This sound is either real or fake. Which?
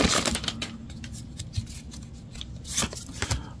real